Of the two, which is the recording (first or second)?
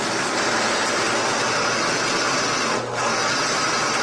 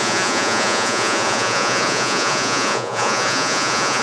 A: first